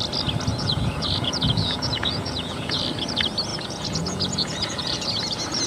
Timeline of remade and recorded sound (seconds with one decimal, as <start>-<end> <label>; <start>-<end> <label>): 0.0-0.5 recorded; 0.5-2.8 remade; 2.8-3.5 recorded; 3.5-5.2 remade; 5.2-5.7 recorded